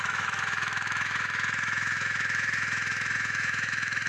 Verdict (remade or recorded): remade